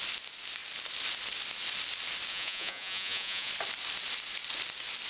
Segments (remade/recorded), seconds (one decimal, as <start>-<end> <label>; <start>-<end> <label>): 0.0-2.3 recorded; 2.3-3.5 remade; 3.5-5.1 recorded